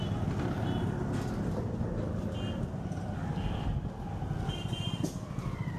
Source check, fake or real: real